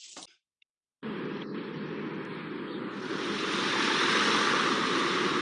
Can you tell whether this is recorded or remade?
recorded